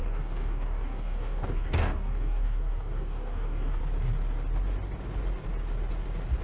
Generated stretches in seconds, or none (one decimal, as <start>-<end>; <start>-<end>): 0.0-3.8